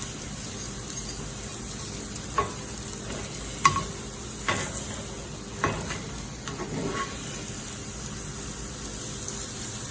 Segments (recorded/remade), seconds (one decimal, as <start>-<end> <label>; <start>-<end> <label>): 0.0-9.9 recorded